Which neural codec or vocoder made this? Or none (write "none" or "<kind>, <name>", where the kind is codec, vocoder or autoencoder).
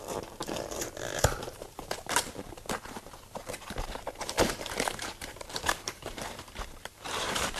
vocoder, BigVGAN v2